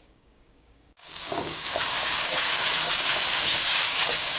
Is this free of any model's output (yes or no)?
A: no